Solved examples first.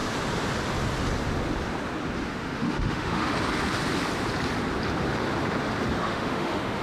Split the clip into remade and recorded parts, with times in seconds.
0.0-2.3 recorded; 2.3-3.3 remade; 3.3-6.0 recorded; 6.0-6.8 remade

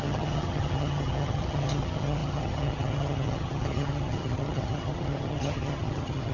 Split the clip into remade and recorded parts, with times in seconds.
0.0-6.3 remade

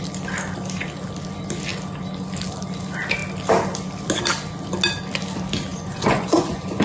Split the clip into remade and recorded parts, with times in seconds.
0.0-5.7 recorded; 5.7-6.8 remade

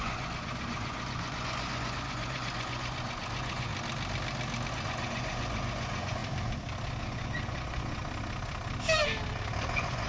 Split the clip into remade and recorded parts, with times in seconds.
0.0-3.7 remade; 3.7-4.7 recorded; 4.7-6.2 remade; 6.2-7.0 recorded; 7.0-8.0 remade; 8.0-9.7 recorded; 9.7-10.1 remade

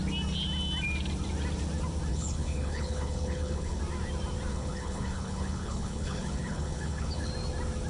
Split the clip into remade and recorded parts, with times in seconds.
0.0-2.1 recorded; 2.1-3.8 remade; 3.8-4.5 recorded; 4.5-7.3 remade; 7.3-7.9 recorded

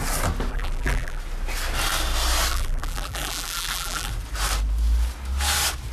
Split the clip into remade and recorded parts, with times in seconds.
0.0-0.5 recorded; 0.5-1.2 remade; 1.2-2.5 recorded; 2.5-4.1 remade; 4.1-5.9 recorded

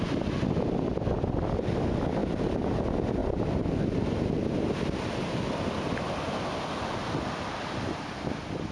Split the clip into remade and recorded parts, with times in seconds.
0.0-2.2 recorded; 2.2-2.8 remade; 2.8-8.7 recorded